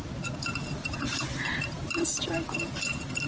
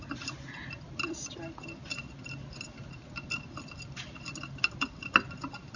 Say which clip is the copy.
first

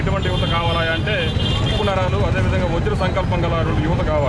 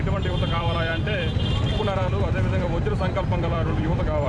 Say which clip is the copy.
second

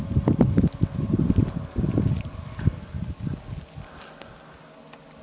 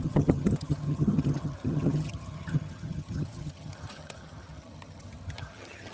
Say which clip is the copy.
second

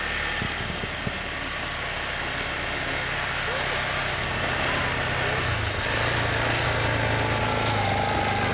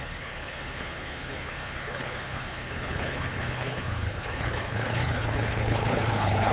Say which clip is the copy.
second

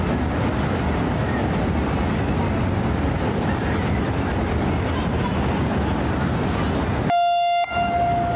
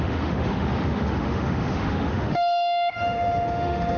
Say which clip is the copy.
second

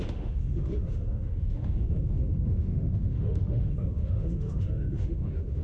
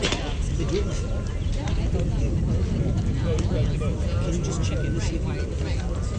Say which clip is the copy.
first